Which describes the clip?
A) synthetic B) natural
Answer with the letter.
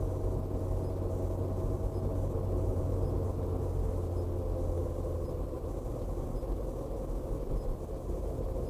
B